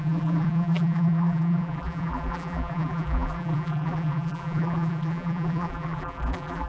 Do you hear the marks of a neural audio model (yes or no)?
yes